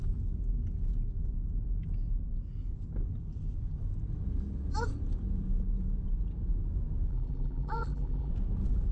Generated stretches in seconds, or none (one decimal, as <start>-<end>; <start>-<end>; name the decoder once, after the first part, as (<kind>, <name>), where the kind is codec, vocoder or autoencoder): 7.1-8.3 (vocoder, BigVGAN v2)